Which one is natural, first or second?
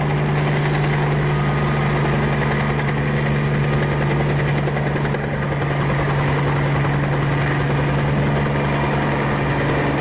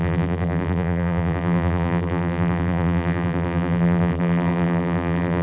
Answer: first